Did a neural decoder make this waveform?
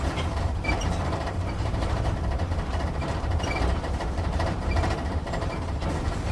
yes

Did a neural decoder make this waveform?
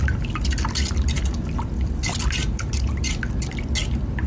no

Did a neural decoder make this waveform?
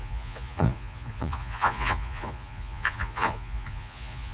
yes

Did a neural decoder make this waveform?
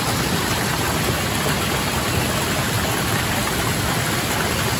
no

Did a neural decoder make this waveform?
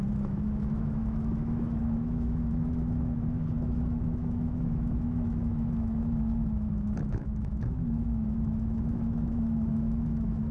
yes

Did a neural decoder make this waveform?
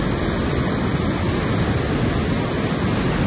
no